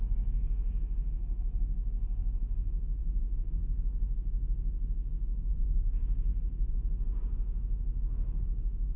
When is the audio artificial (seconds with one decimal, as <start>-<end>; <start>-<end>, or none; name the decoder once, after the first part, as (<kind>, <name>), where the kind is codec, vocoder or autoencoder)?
0.0-6.3 (codec, DAC); 8.4-9.0

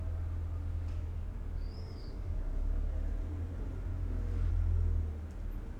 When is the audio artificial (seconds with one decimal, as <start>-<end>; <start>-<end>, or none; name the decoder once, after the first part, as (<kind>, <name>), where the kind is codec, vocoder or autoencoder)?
0.7-2.9 (codec, DAC); 3.9-4.5

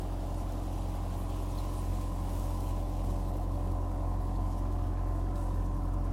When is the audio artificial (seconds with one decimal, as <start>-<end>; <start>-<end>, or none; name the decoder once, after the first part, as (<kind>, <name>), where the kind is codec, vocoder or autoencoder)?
1.9-5.6 (codec, DAC)

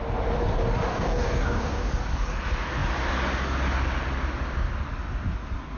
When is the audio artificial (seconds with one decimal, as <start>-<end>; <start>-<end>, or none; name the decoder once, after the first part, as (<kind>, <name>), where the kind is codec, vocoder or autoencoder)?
0.9-1.9 (codec, DAC)